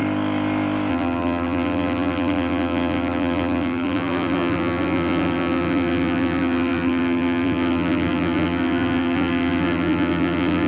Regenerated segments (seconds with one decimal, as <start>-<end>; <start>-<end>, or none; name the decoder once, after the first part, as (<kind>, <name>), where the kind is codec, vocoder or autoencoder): 0.9-10.7 (vocoder, BigVGAN v2)